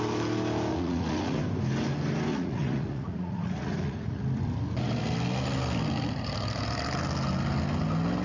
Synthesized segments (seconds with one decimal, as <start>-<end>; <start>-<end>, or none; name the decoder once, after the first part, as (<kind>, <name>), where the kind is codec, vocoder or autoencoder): 0.7-1.4 (vocoder, Vocos); 2.3-4.2